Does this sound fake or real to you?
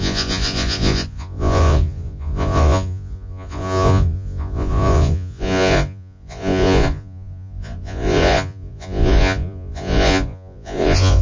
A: fake